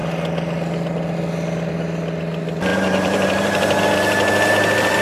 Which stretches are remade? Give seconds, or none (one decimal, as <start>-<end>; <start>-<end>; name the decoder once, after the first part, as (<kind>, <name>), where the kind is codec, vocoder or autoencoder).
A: 2.7-3.8 (vocoder, BigVGAN v2)